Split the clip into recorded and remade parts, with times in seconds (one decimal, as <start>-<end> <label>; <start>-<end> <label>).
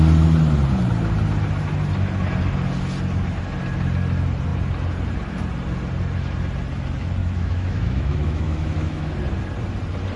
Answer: 0.0-7.2 recorded; 7.2-9.1 remade; 9.1-10.2 recorded